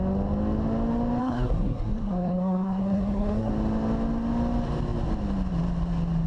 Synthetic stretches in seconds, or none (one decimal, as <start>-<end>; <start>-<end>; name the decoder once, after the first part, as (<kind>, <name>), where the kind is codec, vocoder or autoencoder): 1.2-3.5 (codec, SNAC)